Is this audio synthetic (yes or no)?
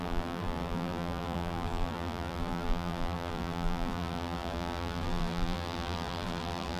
yes